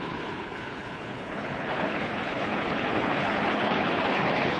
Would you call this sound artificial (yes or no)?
yes